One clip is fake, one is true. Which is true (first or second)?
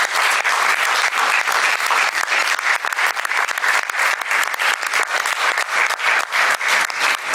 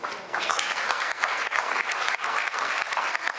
first